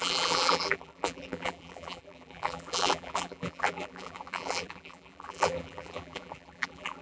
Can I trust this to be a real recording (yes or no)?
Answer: no